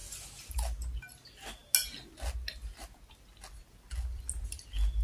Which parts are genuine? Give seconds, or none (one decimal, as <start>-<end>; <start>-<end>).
0.0-5.0